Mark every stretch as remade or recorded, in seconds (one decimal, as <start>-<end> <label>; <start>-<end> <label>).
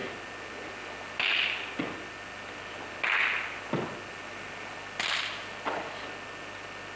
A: 0.0-7.0 recorded